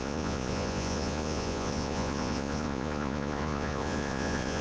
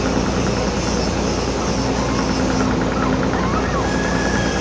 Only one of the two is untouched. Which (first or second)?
second